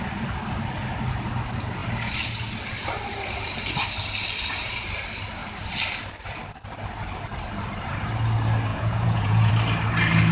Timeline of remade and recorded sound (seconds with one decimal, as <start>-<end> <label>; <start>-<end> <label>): 0.0-8.7 recorded; 8.7-9.5 remade; 9.5-10.3 recorded